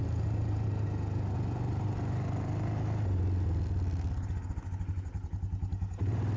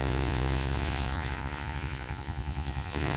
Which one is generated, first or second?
second